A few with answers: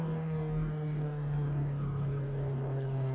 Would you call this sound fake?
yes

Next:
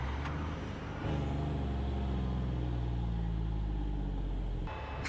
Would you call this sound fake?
no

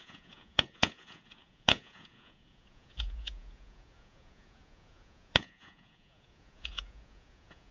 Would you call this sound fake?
yes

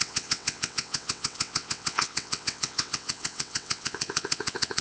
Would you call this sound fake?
yes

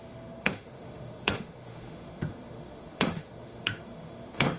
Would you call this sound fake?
yes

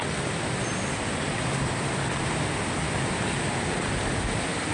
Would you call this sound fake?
no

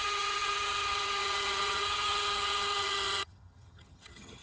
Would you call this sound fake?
yes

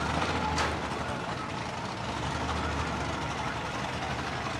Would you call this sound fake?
no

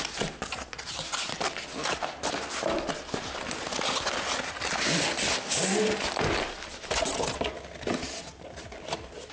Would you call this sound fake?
no